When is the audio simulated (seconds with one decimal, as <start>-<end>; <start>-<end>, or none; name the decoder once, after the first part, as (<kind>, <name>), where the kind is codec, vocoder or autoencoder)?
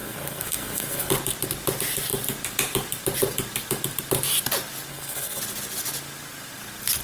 0.0-1.1 (codec, SNAC); 4.9-5.4